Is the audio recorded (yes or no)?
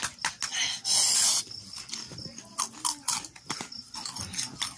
yes